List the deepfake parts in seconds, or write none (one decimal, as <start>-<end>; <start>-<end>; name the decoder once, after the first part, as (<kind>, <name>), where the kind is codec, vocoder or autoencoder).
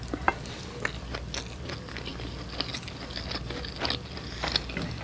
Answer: none